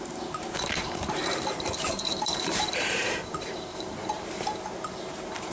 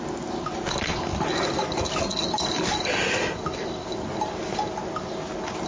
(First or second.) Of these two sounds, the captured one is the second